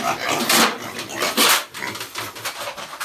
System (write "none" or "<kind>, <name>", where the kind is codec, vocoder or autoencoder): vocoder, BigVGAN v2